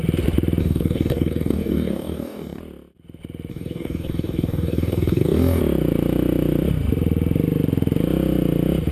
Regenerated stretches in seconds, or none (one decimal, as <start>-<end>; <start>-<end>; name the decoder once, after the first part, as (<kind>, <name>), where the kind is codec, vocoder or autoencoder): 0.6-2.6 (codec, DAC); 3.5-5.6